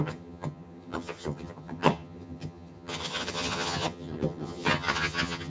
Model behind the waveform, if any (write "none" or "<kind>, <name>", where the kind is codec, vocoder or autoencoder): vocoder, HiFi-GAN